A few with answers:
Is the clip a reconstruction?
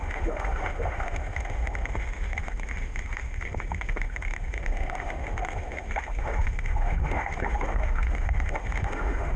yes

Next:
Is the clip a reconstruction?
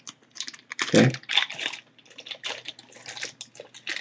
no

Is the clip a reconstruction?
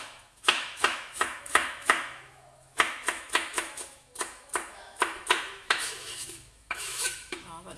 yes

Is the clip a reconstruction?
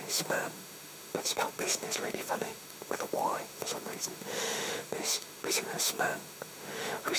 yes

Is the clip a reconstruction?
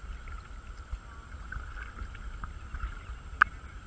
no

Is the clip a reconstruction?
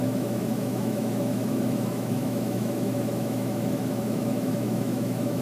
yes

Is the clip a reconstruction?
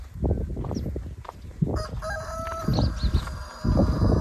no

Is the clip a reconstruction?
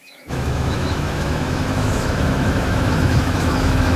yes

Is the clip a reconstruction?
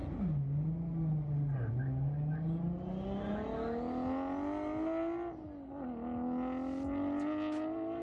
no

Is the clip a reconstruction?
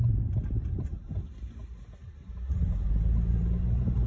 no